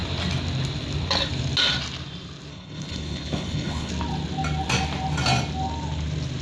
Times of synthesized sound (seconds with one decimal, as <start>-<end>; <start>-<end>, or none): 2.5-3.9